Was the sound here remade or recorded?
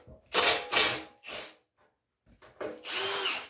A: recorded